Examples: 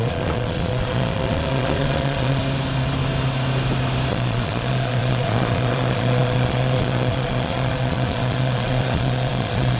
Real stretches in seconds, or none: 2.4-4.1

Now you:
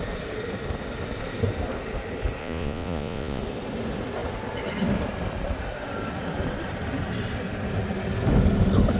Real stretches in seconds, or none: 0.0-2.4; 3.4-9.0

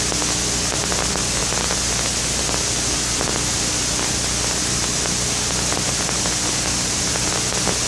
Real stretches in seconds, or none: 0.0-7.9

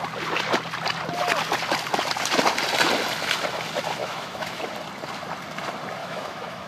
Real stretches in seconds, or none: 0.0-4.0; 4.7-6.0